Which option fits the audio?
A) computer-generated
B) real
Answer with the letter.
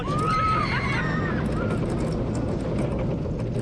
B